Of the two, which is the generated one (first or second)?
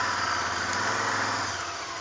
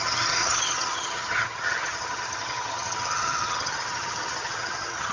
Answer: second